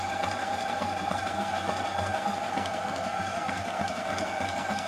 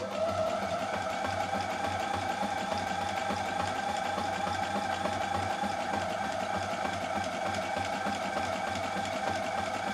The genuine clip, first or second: second